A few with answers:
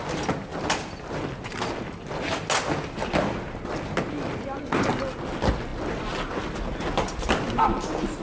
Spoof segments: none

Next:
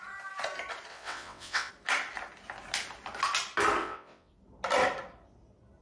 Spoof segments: 0.9-1.7 (vocoder, WaveNeXt); 3.8-4.3

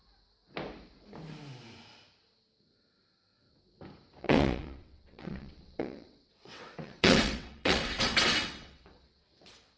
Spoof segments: 4.2-9.8 (vocoder, WaveNeXt)